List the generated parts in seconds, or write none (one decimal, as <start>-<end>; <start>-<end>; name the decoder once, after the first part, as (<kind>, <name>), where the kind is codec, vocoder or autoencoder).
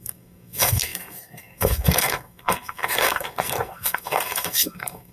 0.0-5.1 (codec, SNAC)